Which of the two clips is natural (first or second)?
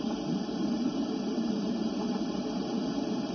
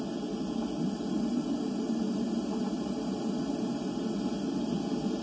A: second